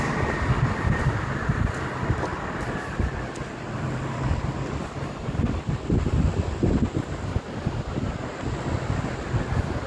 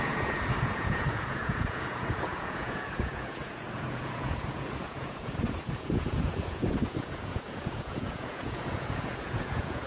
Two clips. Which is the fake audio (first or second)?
second